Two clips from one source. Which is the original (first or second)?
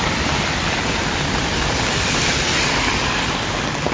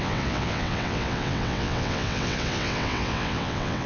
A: first